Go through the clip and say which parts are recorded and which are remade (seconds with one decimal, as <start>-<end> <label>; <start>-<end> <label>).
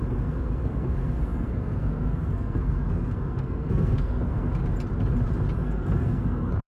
0.0-4.6 remade; 4.6-5.6 recorded; 5.6-6.7 remade